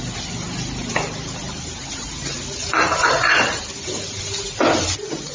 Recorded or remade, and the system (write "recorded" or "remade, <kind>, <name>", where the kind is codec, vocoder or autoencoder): recorded